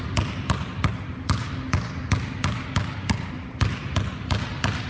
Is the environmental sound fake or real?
real